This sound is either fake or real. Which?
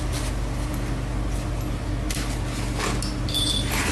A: real